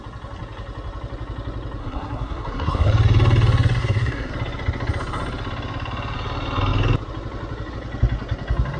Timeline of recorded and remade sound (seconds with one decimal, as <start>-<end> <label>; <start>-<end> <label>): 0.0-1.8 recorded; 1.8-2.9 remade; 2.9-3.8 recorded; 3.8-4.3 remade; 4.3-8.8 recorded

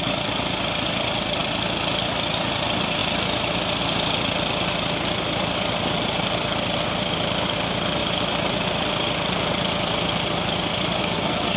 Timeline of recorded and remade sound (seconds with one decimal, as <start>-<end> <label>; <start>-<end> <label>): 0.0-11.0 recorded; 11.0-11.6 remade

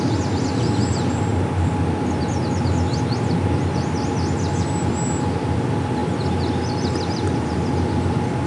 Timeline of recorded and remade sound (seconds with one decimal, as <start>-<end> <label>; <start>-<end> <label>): 0.0-8.5 recorded